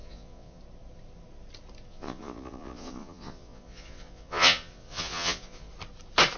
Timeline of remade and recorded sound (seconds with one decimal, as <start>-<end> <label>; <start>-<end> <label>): 0.0-0.6 remade; 0.6-1.9 recorded; 1.9-5.7 remade; 5.7-6.4 recorded